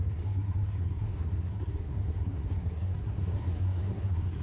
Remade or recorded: remade